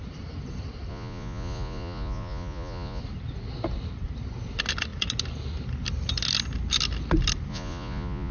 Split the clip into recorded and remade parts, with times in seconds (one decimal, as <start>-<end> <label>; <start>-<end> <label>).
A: 0.0-0.9 recorded; 0.9-3.0 remade; 3.0-7.5 recorded; 7.5-8.3 remade